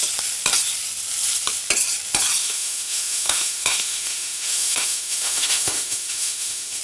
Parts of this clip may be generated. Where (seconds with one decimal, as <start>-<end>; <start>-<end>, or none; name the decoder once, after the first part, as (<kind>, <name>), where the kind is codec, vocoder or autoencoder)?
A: 2.4-6.8 (autoencoder, DAC-VAE)